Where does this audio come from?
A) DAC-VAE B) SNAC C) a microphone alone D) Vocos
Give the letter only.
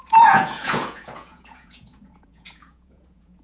D